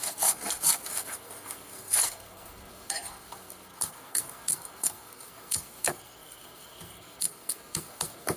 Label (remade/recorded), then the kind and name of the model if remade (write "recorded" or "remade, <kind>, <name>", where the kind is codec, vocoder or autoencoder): remade, codec, SNAC